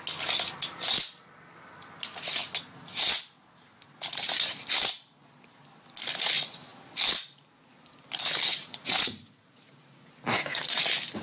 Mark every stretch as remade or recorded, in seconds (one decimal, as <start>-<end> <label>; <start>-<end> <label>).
0.0-8.5 recorded; 8.5-10.1 remade; 10.1-11.2 recorded